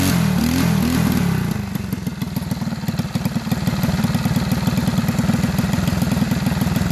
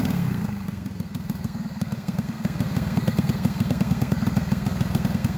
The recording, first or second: first